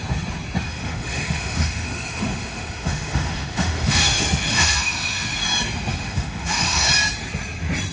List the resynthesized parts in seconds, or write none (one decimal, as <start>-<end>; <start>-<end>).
0.7-5.4; 5.9-6.9